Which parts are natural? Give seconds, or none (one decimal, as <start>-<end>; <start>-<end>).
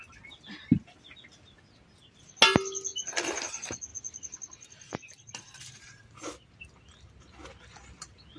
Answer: 0.0-2.9; 3.4-8.4